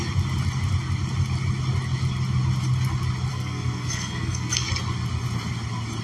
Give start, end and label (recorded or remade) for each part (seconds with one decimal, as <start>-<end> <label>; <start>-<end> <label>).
0.0-3.3 recorded; 3.3-4.7 remade; 4.7-6.0 recorded